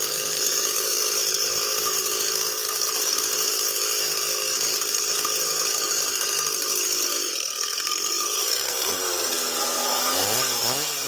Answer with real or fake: fake